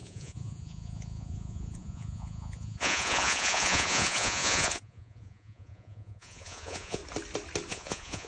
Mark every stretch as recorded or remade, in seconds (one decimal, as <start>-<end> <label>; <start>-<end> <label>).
0.0-7.0 remade; 7.0-7.7 recorded; 7.7-8.3 remade